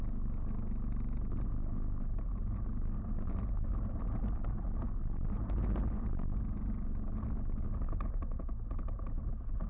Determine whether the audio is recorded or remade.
recorded